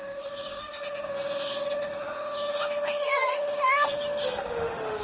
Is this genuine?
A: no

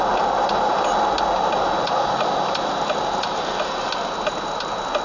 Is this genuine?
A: yes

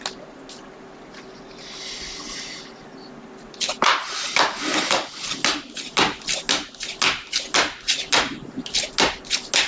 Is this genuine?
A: yes